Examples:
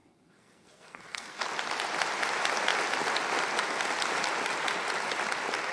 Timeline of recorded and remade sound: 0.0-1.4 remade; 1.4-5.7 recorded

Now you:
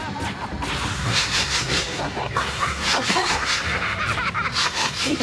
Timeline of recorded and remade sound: 0.0-1.0 recorded; 1.0-4.0 remade; 4.0-4.5 recorded; 4.5-5.2 remade

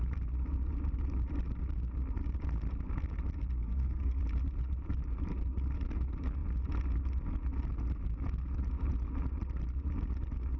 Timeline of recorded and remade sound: 0.0-3.6 recorded; 3.6-4.2 remade; 4.2-10.6 recorded

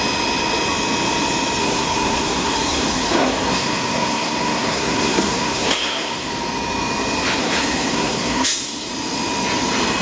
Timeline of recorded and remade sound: 0.0-1.6 recorded; 1.6-6.3 remade; 6.3-7.4 recorded; 7.4-8.9 remade; 8.9-10.0 recorded